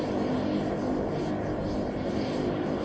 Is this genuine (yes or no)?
yes